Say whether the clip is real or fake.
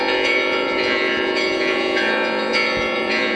fake